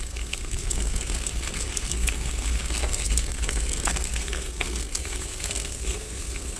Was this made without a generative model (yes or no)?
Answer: no